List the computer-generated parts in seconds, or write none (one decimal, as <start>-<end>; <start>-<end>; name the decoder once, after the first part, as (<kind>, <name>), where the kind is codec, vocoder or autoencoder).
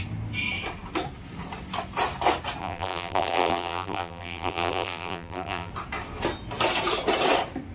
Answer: 2.6-5.7 (vocoder, BigVGAN v2)